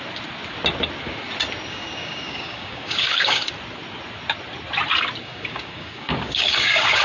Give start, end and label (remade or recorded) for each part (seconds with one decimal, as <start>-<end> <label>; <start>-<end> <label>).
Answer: 0.0-1.7 recorded; 1.7-3.5 remade; 3.5-5.2 recorded; 5.2-7.0 remade